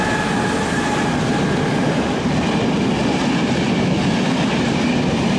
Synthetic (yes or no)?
no